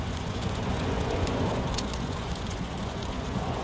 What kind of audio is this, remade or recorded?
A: remade